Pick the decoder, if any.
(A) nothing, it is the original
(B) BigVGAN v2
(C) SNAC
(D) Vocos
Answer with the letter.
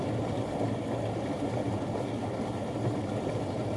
A